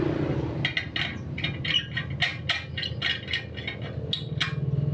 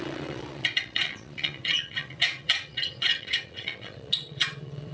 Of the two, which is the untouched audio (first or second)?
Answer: first